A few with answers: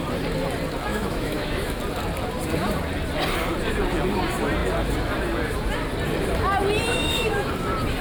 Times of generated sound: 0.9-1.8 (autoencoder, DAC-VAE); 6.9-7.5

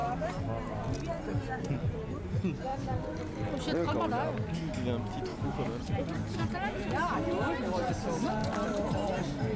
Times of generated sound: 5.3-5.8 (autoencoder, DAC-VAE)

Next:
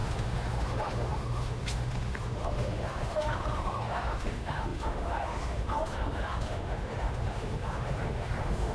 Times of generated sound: 0.0-8.7 (autoencoder, DAC-VAE)

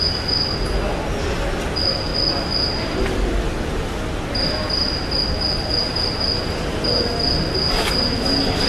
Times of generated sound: none

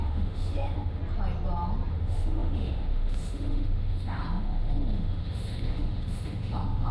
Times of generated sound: 0.0-1.0 (autoencoder, DAC-VAE); 1.9-6.9